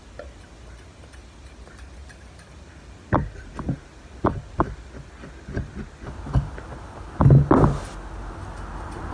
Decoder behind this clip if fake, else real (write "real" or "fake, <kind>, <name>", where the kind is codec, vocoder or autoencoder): real